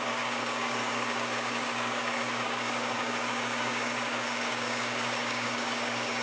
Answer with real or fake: fake